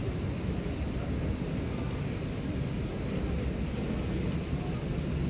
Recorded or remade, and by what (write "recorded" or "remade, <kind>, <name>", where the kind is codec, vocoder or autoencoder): recorded